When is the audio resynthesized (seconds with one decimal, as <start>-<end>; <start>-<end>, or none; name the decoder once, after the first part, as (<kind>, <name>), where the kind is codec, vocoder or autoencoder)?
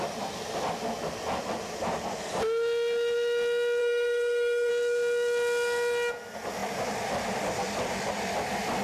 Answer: 3.8-4.7 (codec, SNAC)